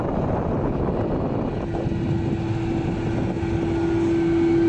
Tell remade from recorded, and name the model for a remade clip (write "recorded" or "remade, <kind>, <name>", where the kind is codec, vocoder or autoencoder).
recorded